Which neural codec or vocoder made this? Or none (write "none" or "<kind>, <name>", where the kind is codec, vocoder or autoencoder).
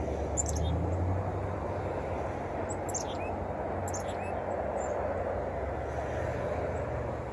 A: none